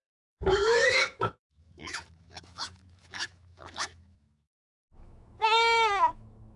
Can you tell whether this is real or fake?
fake